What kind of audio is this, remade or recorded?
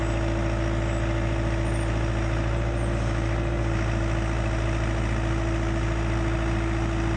recorded